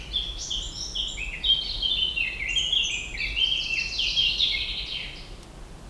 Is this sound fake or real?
real